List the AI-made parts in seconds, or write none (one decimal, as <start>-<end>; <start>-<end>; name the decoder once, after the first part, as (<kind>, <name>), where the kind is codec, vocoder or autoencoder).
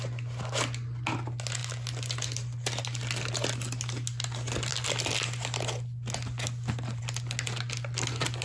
none